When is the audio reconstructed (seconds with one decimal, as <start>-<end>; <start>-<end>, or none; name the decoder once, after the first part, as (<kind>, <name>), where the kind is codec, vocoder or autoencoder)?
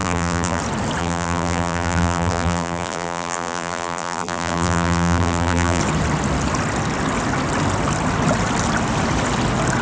0.0-0.6 (vocoder, BigVGAN v2); 1.0-5.8